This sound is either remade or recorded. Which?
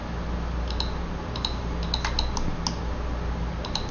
recorded